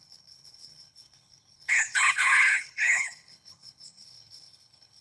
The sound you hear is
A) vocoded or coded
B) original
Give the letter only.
A